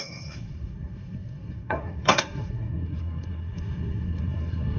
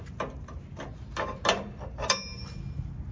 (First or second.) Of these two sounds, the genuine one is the second